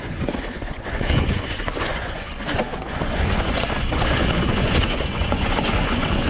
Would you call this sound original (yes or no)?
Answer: no